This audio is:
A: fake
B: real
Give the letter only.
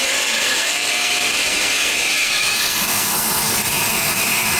A